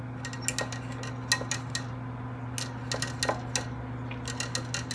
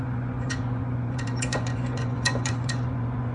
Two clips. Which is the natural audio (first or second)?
first